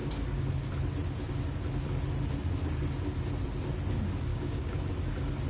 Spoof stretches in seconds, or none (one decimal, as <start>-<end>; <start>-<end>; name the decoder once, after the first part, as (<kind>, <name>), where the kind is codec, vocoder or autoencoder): 4.3-4.8 (codec, DAC)